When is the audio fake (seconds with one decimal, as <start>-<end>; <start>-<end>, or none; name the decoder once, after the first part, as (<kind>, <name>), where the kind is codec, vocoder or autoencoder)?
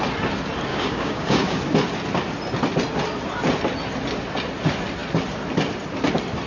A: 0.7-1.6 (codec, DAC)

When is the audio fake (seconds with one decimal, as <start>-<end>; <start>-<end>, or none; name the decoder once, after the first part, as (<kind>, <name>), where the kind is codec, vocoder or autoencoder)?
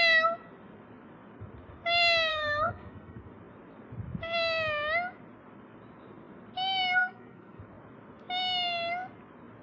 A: 2.3-3.3 (codec, SNAC); 7.0-7.6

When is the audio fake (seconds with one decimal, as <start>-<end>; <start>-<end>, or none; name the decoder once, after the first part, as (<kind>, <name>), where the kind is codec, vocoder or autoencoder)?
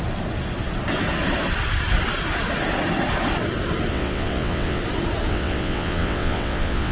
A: 3.9-4.8 (vocoder, WaveNeXt); 5.3-6.9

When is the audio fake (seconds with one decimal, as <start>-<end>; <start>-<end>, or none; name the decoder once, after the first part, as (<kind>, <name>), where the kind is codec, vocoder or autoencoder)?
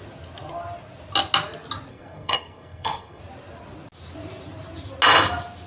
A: 1.9-3.2 (codec, SNAC)